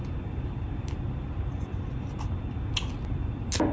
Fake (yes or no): no